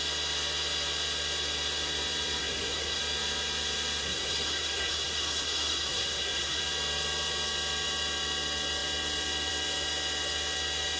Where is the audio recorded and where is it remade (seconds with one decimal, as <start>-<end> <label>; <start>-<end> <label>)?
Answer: 0.0-2.4 recorded; 2.4-3.0 remade; 3.0-4.0 recorded; 4.0-6.6 remade; 6.6-11.0 recorded

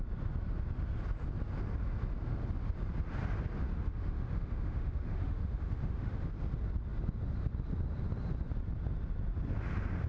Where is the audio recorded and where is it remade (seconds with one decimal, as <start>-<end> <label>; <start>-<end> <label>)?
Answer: 0.0-3.7 recorded; 3.7-6.3 remade; 6.3-10.1 recorded

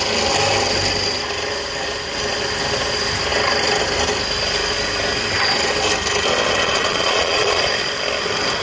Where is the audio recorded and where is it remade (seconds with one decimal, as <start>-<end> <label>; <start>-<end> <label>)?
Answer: 0.0-6.6 recorded; 6.6-7.7 remade; 7.7-8.6 recorded

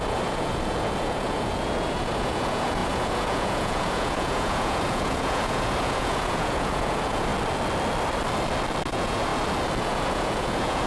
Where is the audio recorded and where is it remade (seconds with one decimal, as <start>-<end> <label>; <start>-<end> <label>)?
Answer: 0.0-7.3 remade; 7.3-8.9 recorded; 8.9-9.3 remade; 9.3-9.8 recorded; 9.8-10.9 remade

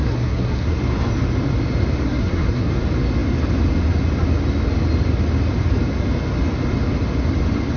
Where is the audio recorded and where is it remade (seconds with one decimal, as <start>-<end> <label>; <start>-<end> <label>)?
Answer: 0.0-0.8 remade; 0.8-2.0 recorded; 2.0-2.7 remade; 2.7-7.8 recorded

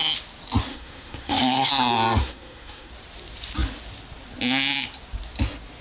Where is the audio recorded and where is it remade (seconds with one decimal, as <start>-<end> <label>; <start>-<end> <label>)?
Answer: 0.0-0.7 recorded; 0.7-1.7 remade; 1.7-2.2 recorded; 2.2-2.9 remade; 2.9-5.8 recorded